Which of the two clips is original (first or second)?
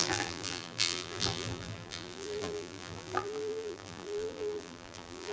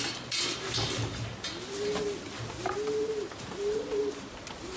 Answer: second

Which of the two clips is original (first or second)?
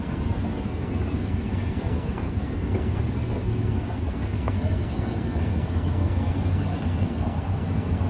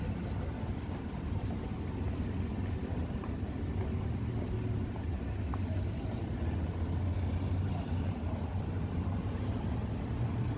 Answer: second